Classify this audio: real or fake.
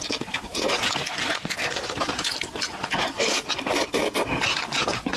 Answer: real